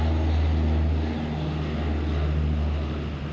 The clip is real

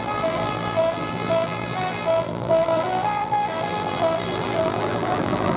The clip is fake